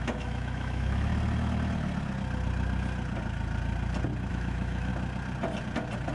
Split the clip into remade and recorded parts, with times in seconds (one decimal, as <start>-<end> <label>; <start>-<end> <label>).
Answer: 0.0-1.1 remade; 1.1-4.3 recorded; 4.3-4.9 remade; 4.9-6.1 recorded

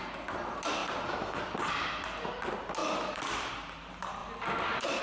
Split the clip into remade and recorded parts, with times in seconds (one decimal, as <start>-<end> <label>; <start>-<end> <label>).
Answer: 0.0-2.8 recorded; 2.8-3.5 remade; 3.5-4.2 recorded; 4.2-5.0 remade

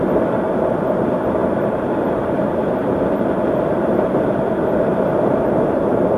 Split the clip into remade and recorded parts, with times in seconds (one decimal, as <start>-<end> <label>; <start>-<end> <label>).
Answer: 0.0-1.4 recorded; 1.4-5.1 remade; 5.1-6.2 recorded